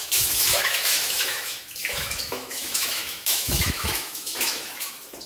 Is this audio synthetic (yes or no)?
yes